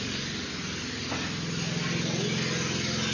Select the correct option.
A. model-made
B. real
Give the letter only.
B